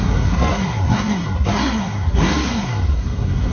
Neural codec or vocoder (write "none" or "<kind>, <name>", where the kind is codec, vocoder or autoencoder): codec, SNAC